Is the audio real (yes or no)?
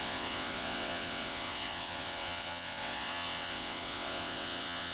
no